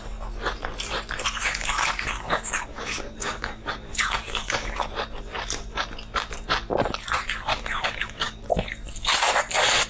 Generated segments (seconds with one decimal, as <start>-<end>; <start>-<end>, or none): 1.4-4.9; 7.5-8.5